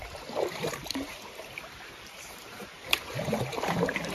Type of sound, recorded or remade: remade